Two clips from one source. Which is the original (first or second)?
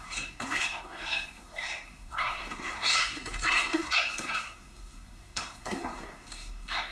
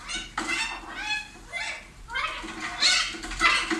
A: second